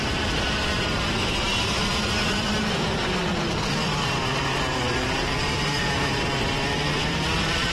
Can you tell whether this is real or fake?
fake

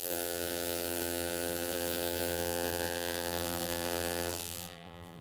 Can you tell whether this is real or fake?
fake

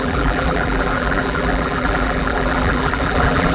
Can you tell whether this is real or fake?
fake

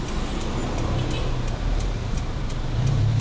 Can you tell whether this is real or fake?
fake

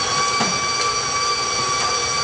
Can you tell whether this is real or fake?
real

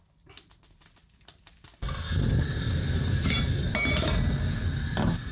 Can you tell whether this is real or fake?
real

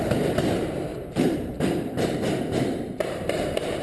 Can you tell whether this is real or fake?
fake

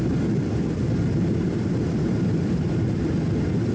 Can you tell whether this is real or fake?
fake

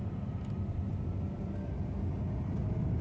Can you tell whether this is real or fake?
fake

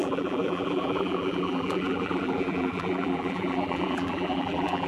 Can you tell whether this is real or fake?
fake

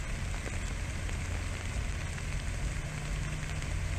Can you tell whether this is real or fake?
real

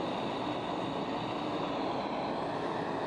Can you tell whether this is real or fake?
real